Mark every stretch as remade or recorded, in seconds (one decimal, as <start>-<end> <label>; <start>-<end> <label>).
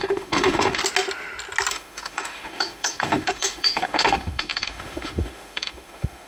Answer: 0.0-0.8 remade; 0.8-1.7 recorded; 1.7-6.3 remade